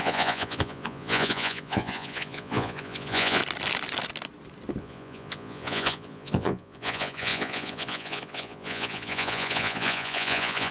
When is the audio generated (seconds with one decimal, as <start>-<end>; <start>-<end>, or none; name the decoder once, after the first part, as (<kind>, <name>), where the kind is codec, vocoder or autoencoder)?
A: 0.0-3.4 (vocoder, Vocos); 4.8-10.7